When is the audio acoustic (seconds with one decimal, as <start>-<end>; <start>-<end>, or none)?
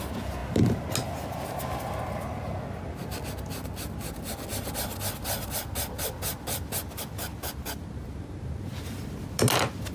0.0-9.9